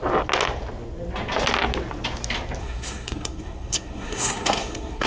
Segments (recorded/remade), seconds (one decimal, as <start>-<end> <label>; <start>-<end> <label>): 0.0-2.6 recorded; 2.6-5.1 remade